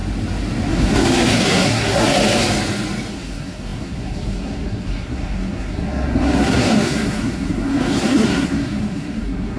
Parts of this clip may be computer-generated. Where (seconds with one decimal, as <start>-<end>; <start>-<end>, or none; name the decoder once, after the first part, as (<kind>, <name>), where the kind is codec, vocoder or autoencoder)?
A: 0.7-2.2 (codec, SNAC); 3.1-9.6